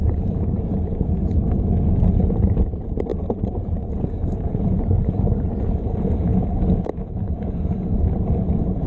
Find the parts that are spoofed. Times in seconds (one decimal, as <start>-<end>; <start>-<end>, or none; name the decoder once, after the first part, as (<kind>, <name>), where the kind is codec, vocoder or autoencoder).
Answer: 0.0-1.4 (vocoder, BigVGAN v2); 2.2-8.9